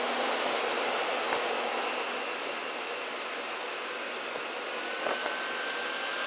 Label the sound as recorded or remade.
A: recorded